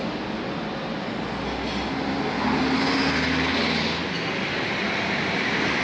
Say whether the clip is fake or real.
real